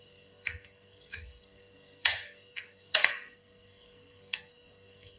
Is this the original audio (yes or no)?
no